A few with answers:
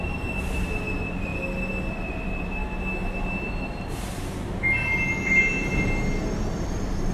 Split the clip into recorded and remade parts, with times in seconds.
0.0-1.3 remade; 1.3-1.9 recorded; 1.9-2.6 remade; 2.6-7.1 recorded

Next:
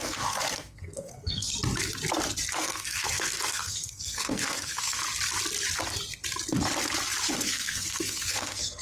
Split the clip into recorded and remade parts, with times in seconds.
0.0-1.5 remade; 1.5-2.5 recorded; 2.5-5.0 remade; 5.0-7.3 recorded; 7.3-8.8 remade